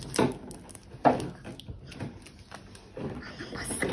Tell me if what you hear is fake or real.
real